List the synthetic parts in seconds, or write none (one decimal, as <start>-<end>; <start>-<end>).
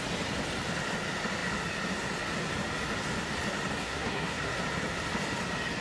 3.8-4.6